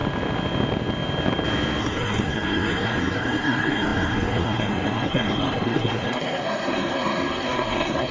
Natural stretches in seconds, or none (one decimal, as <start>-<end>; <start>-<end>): 0.0-1.8